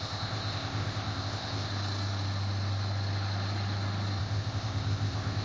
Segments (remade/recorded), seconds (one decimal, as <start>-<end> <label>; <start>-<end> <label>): 0.0-1.7 remade; 1.7-4.2 recorded; 4.2-5.4 remade